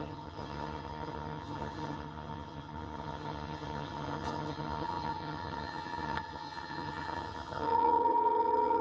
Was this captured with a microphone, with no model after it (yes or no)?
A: no